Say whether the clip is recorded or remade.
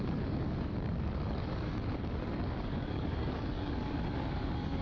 remade